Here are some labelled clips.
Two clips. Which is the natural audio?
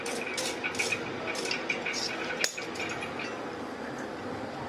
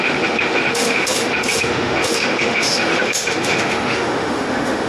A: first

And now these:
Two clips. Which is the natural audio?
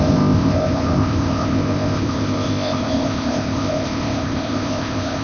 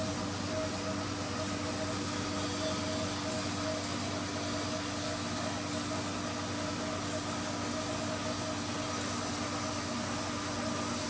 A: second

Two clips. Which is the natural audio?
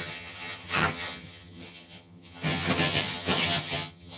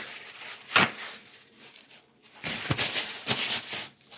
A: second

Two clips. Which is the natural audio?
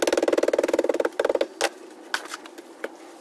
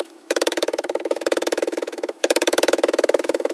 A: first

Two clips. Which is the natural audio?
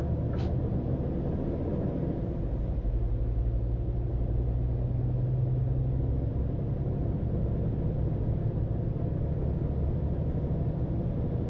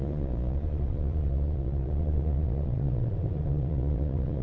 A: first